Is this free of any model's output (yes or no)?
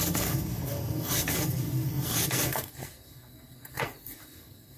no